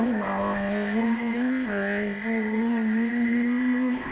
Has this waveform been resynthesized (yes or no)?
yes